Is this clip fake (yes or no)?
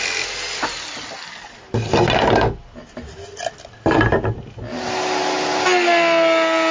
no